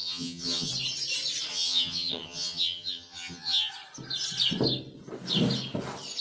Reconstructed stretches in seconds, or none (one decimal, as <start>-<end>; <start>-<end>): 0.0-0.7; 1.5-3.7